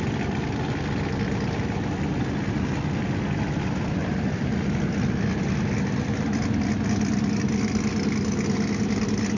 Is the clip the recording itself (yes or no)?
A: yes